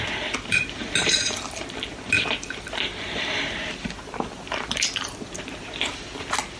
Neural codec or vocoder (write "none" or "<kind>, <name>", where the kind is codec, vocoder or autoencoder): vocoder, BigVGAN v2